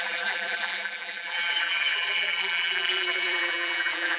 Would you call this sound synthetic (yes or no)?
yes